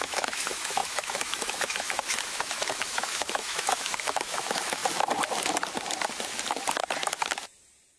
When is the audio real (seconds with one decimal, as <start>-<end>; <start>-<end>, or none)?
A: 4.8-8.0